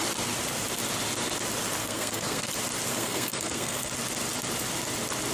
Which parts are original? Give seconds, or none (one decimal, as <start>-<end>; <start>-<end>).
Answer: 0.0-1.8; 2.5-2.9; 3.9-5.3